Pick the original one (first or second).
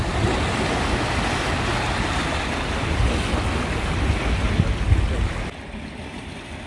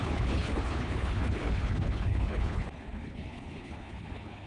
first